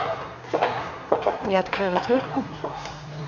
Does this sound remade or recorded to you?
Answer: remade